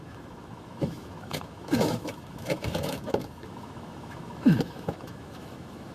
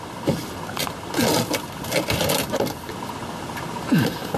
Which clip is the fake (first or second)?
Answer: first